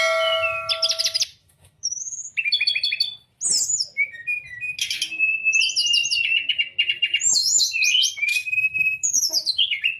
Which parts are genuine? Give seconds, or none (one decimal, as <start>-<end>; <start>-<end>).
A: 0.0-1.4; 2.0-8.3; 9.2-10.0